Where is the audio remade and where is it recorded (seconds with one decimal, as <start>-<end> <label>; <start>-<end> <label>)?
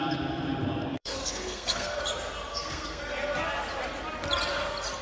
0.0-0.9 recorded; 0.9-2.0 remade; 2.0-2.5 recorded; 2.5-3.0 remade; 3.0-5.0 recorded